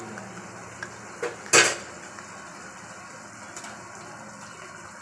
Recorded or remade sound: recorded